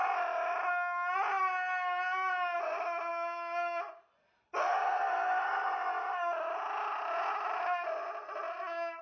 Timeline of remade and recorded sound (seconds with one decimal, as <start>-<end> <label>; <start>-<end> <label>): 0.0-9.0 recorded